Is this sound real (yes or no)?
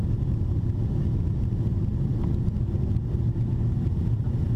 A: yes